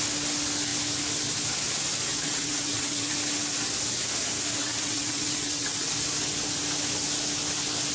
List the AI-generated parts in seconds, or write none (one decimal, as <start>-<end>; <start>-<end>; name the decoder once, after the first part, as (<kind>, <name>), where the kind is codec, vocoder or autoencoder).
2.1-3.1 (vocoder, WaveNeXt); 4.6-5.9